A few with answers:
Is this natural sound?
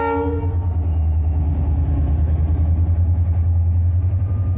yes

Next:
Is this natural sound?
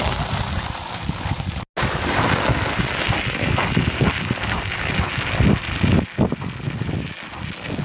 yes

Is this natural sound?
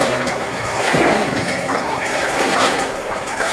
no